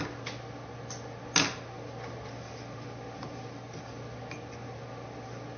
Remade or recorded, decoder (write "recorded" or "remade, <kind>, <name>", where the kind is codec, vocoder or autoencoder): recorded